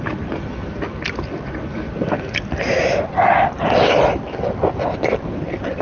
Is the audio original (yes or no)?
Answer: yes